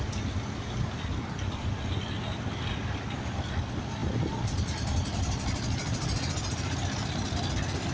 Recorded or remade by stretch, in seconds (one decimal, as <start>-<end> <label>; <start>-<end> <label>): 0.0-7.9 recorded